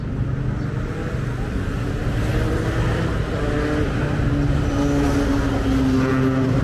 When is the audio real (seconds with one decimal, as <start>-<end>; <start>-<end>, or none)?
0.0-6.6